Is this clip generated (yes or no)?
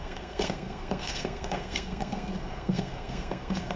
yes